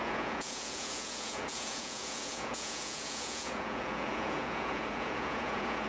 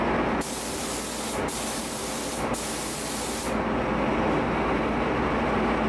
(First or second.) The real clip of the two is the second